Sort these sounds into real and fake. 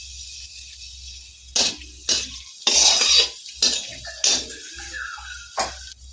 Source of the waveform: real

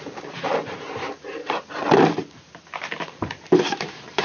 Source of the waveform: fake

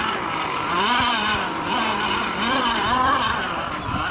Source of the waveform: fake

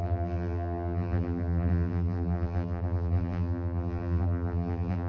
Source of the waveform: fake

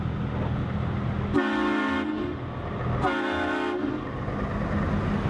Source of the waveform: real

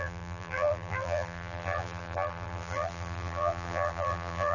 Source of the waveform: fake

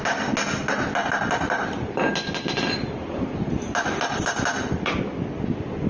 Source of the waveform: real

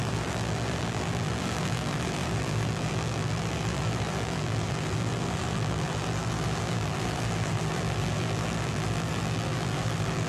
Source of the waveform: fake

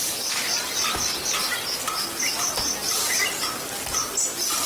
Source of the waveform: real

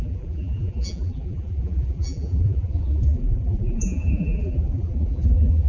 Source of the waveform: fake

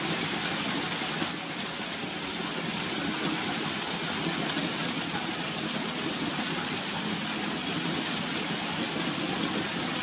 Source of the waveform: real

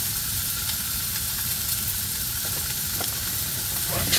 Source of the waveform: fake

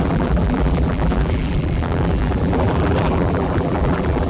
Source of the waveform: fake